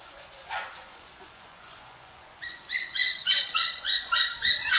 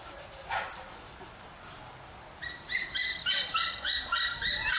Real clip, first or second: second